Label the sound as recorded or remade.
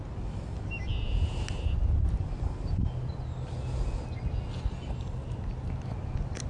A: recorded